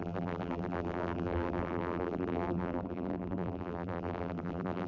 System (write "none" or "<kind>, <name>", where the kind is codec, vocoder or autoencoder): vocoder, BigVGAN v2